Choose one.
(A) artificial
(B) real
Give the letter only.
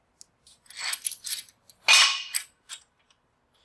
B